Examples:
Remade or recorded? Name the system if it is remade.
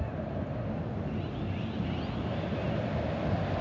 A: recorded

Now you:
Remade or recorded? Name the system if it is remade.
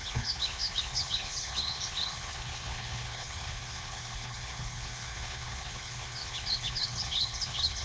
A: remade, codec, HILCodec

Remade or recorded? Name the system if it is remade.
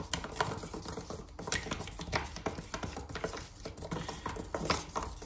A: recorded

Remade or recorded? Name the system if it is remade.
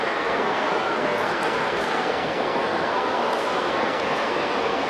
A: remade, codec, SNAC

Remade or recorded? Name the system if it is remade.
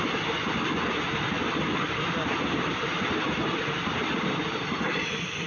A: remade, vocoder, BigVGAN v2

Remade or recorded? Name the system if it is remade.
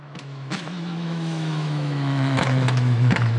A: remade, autoencoder, DAC-VAE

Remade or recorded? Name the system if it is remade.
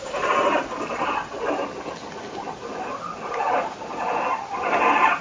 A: recorded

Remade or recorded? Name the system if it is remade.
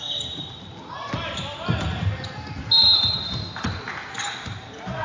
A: recorded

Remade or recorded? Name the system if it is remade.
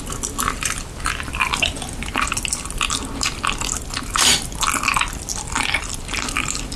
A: recorded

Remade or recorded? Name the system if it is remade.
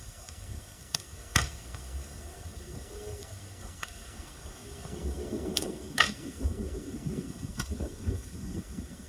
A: remade, codec, SNAC